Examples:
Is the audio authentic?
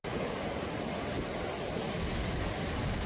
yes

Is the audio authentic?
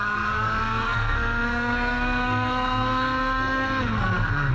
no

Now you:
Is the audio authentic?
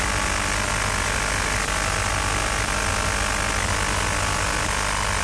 yes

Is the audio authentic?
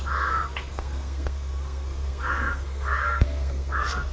no